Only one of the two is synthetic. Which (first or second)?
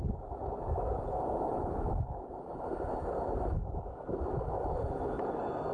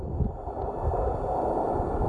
first